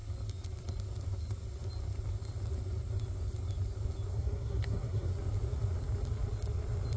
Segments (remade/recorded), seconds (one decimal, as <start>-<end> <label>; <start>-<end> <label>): 0.0-4.1 recorded; 4.1-5.1 remade; 5.1-7.0 recorded